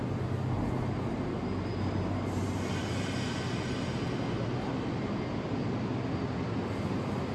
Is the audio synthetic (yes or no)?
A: no